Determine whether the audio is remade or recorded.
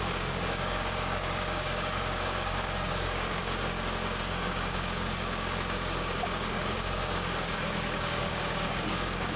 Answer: remade